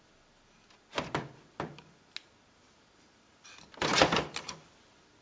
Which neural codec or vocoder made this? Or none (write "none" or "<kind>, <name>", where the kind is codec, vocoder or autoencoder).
none